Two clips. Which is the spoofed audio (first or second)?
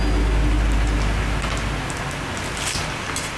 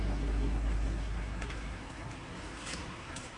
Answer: second